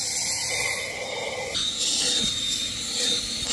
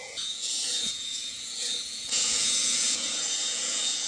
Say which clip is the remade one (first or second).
second